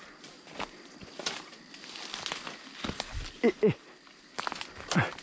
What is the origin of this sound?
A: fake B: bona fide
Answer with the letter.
B